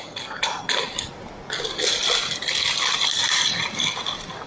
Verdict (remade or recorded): recorded